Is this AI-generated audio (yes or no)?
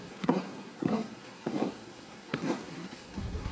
yes